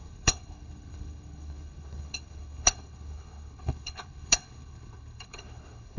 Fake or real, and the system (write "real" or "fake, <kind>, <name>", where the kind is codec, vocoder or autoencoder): fake, codec, HILCodec